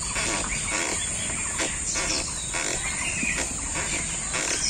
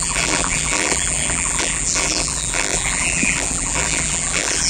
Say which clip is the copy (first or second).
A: second